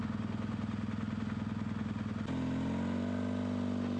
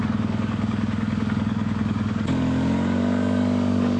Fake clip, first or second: second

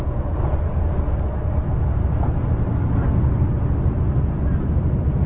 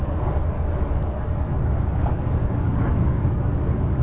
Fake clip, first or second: second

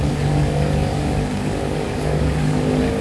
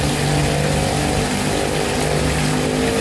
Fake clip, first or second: first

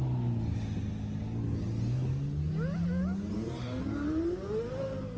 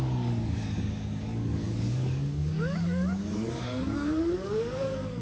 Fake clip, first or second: second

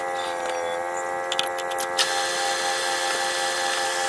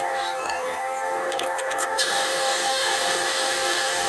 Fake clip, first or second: second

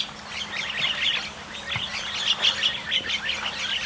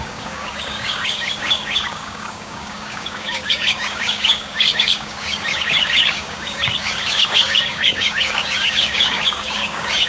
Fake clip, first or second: second